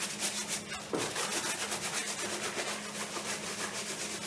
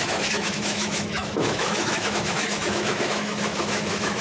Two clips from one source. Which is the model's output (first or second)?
second